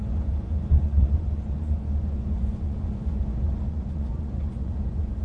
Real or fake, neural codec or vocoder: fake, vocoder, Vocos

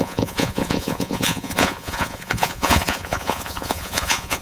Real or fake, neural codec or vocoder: fake, vocoder, Vocos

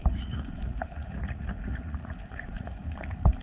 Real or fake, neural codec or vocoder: fake, vocoder, Vocos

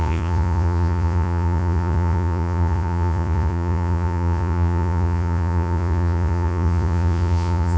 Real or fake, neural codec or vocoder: fake, vocoder, Vocos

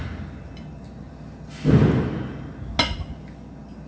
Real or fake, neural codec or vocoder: real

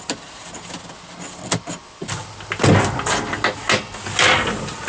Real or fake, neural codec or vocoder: real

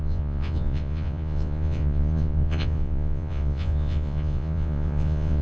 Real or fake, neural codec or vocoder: fake, vocoder, Vocos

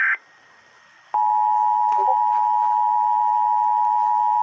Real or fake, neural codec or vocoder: real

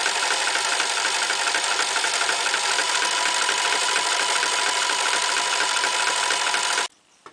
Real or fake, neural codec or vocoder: real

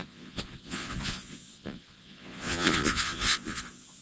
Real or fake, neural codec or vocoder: fake, vocoder, Vocos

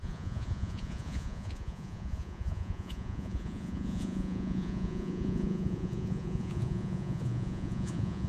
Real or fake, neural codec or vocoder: fake, vocoder, Vocos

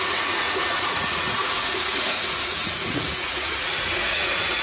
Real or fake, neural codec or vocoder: fake, vocoder, Vocos